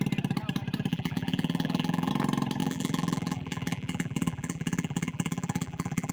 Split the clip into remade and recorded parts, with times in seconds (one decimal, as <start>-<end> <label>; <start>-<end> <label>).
0.0-0.9 recorded; 0.9-2.1 remade; 2.1-2.6 recorded; 2.6-6.1 remade